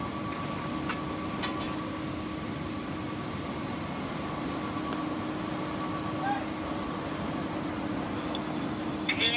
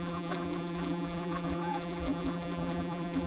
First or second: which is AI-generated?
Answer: second